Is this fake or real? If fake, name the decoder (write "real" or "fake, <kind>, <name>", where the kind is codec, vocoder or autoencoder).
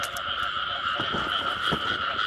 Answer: real